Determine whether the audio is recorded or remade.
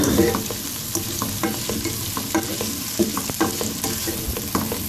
recorded